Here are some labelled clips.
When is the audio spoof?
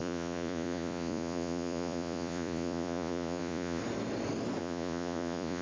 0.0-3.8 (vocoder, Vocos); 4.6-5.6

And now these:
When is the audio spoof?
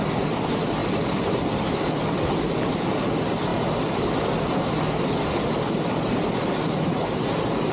none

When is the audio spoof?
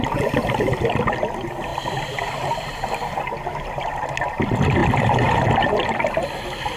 1.7-2.9 (vocoder, BigVGAN v2); 4.8-5.4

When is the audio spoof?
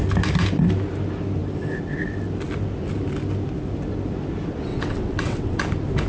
4.7-5.6 (vocoder, WaveNeXt)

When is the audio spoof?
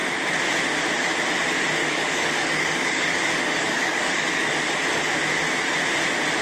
1.8-4.5 (codec, DAC)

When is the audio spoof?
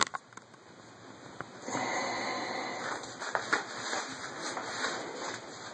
none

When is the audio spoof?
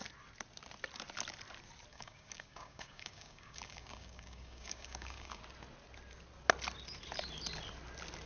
1.9-5.4 (codec, DAC)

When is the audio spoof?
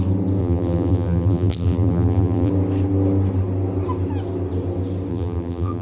0.4-2.5 (vocoder, BigVGAN v2); 5.1-5.8